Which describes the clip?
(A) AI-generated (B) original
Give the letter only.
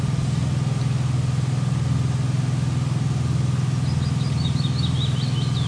B